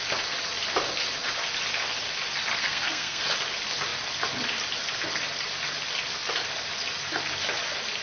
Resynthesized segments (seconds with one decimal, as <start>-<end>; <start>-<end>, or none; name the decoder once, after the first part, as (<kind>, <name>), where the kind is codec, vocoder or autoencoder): 2.6-3.2 (codec, SNAC)